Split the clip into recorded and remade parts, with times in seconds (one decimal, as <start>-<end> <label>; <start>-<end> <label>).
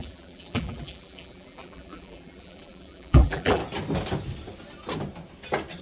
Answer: 0.0-3.6 remade; 3.6-5.8 recorded